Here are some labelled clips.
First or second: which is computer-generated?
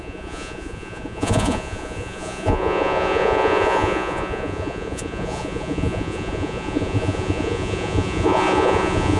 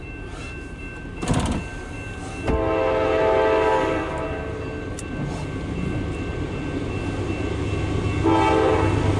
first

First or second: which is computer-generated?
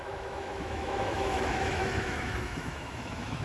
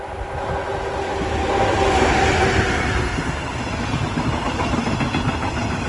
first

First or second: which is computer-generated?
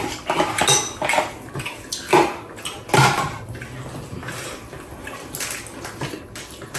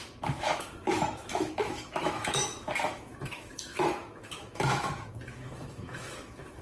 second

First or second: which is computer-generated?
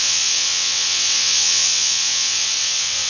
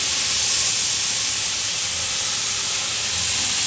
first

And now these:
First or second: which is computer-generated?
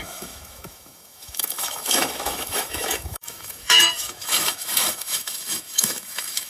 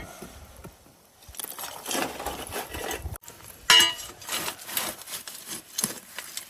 first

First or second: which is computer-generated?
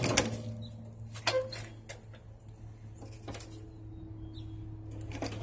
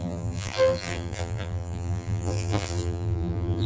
second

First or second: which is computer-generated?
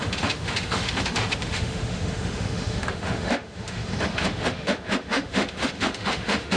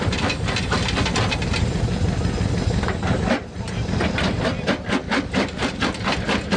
first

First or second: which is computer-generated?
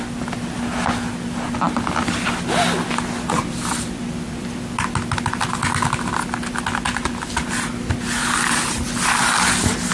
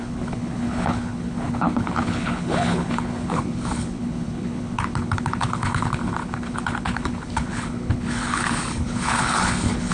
second